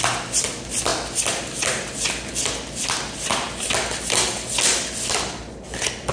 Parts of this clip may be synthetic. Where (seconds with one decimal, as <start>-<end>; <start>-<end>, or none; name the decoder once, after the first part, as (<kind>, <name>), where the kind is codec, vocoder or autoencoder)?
none